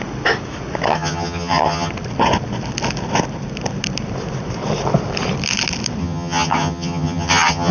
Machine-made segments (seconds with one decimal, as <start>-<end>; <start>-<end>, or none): 0.9-1.9; 6.0-7.7